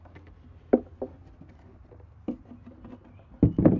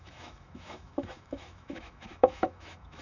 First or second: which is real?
first